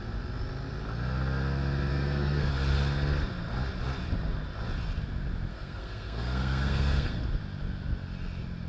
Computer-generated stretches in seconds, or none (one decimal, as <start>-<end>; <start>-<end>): 1.9-2.5; 5.5-7.2